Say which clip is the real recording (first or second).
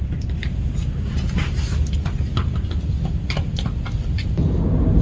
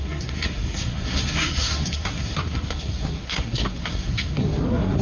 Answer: first